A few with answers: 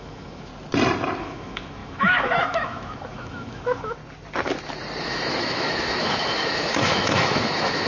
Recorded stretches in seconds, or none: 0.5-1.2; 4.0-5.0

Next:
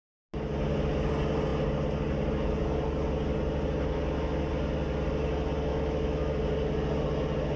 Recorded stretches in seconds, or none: 0.0-5.7; 6.3-7.6